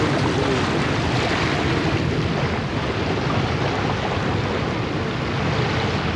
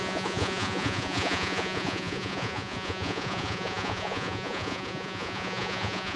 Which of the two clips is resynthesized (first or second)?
second